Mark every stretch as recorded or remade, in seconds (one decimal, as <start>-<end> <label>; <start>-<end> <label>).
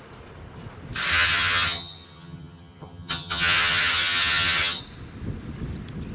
0.0-1.1 recorded; 1.1-4.8 remade; 4.8-6.1 recorded